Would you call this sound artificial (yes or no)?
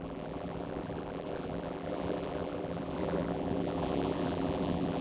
yes